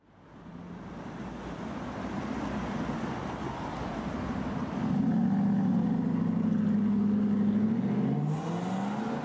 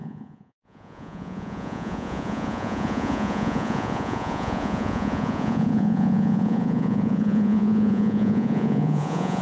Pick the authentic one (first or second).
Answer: first